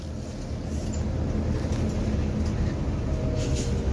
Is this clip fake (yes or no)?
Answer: no